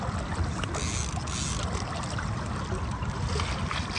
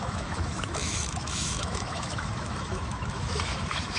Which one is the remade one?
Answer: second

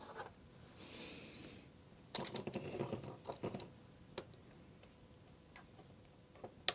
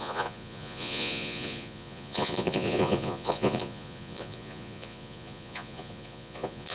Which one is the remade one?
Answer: second